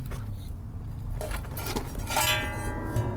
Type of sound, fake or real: real